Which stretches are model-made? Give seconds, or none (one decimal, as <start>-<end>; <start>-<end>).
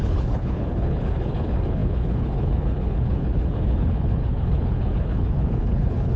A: 0.0-6.2